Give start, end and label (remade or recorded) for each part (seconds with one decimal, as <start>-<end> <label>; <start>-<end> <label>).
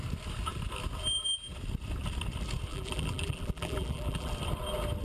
0.0-2.7 recorded; 2.7-4.3 remade; 4.3-5.0 recorded